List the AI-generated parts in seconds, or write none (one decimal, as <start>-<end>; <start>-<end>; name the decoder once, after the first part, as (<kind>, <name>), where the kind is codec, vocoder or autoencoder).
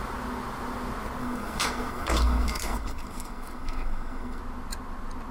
1.2-4.4 (codec, SNAC)